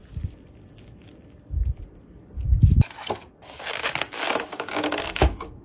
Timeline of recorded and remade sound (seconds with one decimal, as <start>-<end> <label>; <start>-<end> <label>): 0.0-4.5 recorded; 4.5-5.6 remade

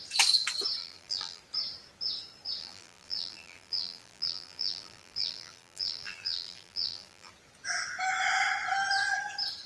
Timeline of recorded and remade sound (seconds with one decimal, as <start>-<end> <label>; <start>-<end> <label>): 0.0-0.8 recorded; 0.8-1.4 remade; 1.4-2.6 recorded; 2.6-7.3 remade; 7.3-9.7 recorded

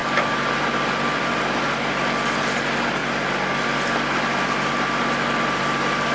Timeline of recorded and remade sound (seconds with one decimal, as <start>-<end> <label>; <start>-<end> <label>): 0.0-6.1 recorded

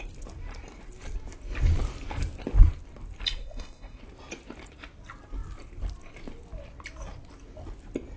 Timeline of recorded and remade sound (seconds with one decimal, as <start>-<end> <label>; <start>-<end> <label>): 0.0-3.4 recorded; 3.4-4.0 remade; 4.0-8.2 recorded

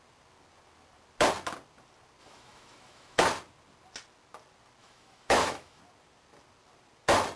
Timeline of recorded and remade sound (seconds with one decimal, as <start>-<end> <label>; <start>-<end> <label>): 0.0-2.2 recorded; 2.2-3.2 remade; 3.2-4.8 recorded; 4.8-5.8 remade; 5.8-7.4 recorded

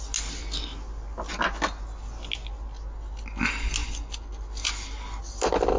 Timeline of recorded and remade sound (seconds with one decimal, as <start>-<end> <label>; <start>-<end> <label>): 0.0-5.8 recorded